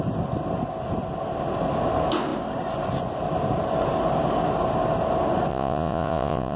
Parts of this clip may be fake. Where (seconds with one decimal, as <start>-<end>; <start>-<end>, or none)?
5.5-6.6